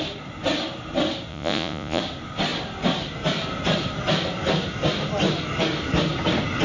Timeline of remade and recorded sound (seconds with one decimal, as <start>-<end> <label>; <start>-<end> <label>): 0.0-1.3 recorded; 1.3-2.0 remade; 2.0-6.6 recorded